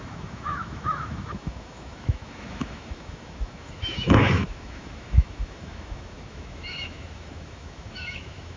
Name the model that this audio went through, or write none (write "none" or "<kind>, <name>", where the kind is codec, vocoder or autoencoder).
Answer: autoencoder, DAC-VAE